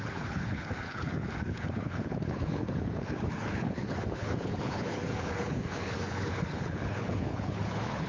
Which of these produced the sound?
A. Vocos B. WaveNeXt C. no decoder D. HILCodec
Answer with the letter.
D